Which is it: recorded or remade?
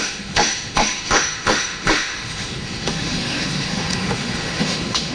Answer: remade